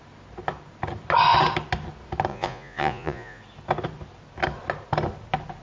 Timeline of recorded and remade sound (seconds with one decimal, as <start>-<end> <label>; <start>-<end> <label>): 0.0-2.3 recorded; 2.3-3.4 remade; 3.4-5.6 recorded